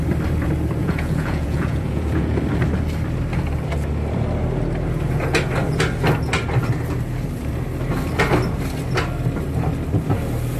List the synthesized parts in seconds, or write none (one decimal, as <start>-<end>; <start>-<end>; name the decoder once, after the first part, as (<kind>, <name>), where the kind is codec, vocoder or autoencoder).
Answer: 0.8-2.4 (vocoder, Vocos)